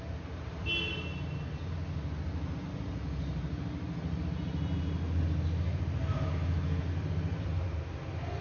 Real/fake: real